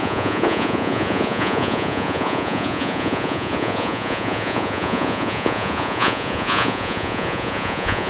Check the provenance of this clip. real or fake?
fake